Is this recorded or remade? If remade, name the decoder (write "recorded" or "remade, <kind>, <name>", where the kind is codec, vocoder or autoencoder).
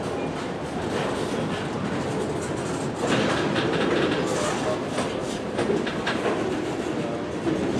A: recorded